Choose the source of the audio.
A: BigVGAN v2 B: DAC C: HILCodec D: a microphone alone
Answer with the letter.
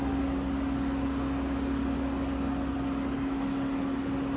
D